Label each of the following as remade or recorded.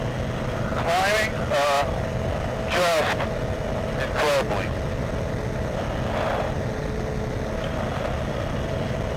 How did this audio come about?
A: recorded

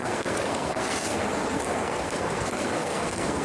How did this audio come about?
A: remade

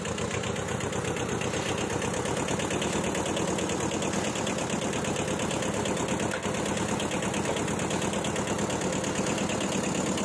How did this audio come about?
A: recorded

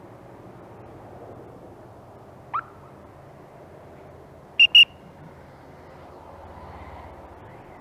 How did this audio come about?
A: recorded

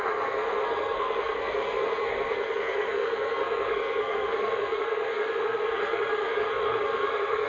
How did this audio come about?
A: remade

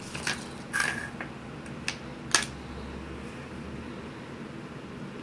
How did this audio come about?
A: recorded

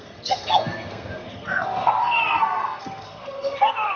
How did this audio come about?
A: remade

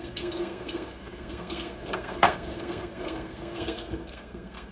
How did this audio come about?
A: remade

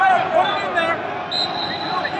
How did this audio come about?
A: recorded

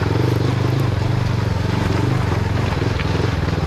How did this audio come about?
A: recorded